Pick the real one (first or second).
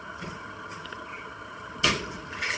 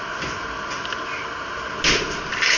second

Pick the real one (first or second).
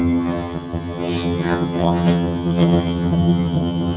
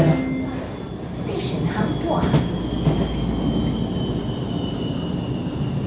second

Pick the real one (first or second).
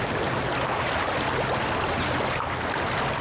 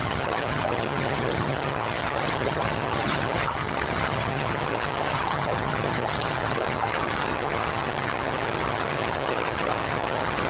first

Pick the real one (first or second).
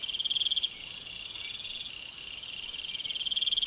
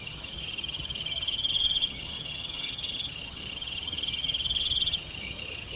first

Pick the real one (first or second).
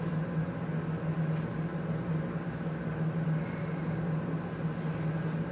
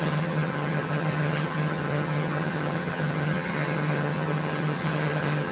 first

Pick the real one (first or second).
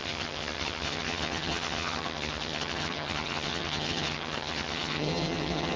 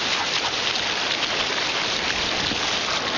second